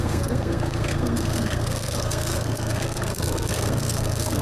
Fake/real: fake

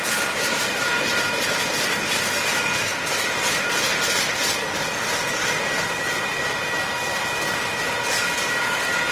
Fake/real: real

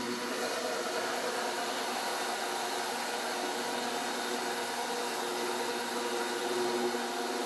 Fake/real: real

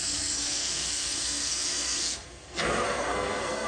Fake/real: fake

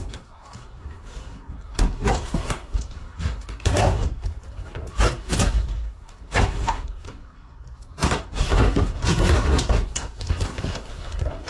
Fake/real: fake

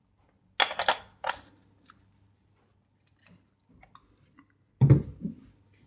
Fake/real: real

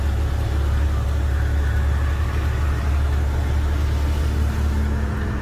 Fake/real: real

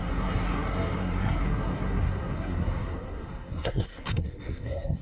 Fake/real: fake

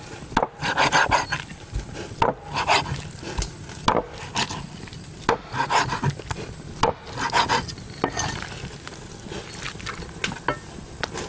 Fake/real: real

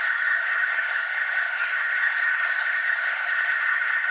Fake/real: fake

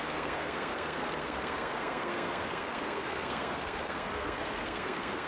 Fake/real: fake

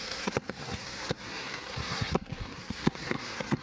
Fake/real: fake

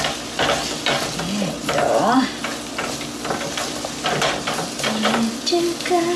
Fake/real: real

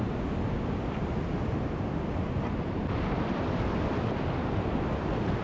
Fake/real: real